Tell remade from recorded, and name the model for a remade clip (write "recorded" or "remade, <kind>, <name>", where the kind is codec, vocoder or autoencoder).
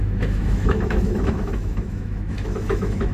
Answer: remade, autoencoder, DAC-VAE